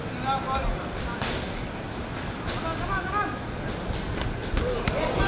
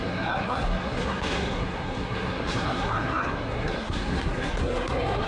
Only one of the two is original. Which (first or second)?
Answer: first